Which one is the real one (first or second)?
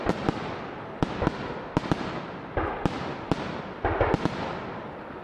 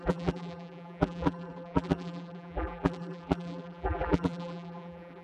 first